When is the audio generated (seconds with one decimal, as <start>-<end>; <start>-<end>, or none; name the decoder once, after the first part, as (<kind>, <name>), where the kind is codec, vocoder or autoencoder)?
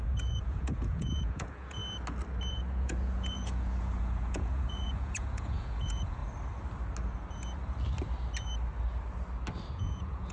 0.0-1.8 (vocoder, Vocos); 2.5-6.2; 9.7-10.3